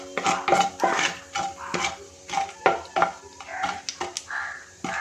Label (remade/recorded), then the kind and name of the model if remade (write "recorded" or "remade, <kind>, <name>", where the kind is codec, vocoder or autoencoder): recorded